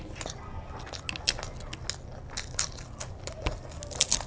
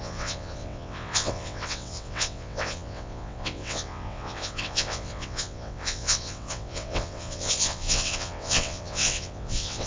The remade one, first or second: second